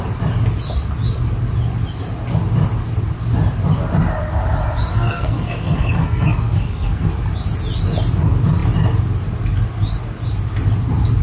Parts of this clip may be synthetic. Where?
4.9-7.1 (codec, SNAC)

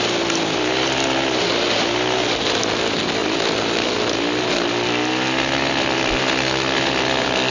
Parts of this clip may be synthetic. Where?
none

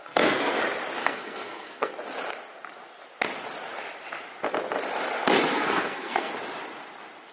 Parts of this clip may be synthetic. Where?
0.0-0.6 (codec, SNAC); 1.0-1.9; 5.5-6.3

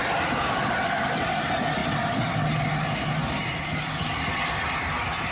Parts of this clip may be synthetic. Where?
none

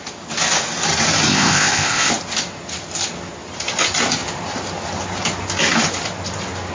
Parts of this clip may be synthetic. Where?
1.3-2.1 (codec, ZipCodec)

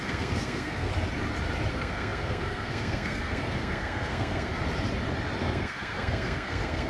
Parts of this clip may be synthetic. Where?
0.0-0.9 (codec, SNAC); 1.7-4.5; 5.4-6.9

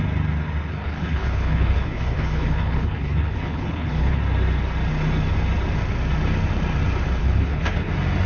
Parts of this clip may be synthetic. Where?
0.7-4.2 (codec, HILCodec); 7.2-7.9